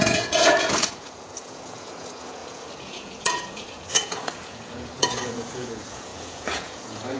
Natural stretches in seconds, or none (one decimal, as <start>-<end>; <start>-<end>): none